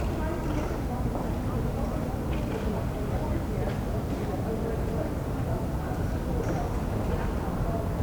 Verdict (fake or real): real